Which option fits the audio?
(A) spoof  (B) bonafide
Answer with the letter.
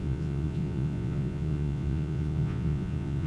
A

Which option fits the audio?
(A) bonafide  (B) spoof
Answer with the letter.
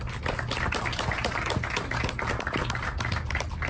A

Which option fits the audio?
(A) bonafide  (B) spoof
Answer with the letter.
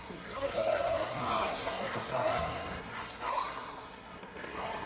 B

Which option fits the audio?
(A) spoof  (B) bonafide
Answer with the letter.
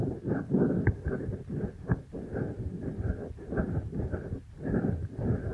B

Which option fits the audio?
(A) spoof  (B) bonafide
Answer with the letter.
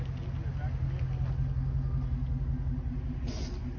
B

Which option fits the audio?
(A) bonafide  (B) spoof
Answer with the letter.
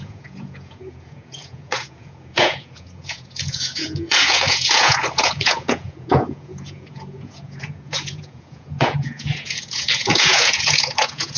B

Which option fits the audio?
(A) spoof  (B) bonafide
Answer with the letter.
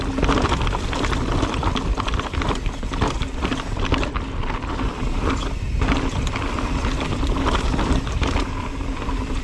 B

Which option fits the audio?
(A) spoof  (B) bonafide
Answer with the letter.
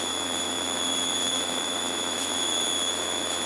A